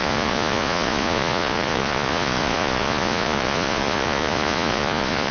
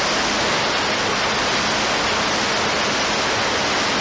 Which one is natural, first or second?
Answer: second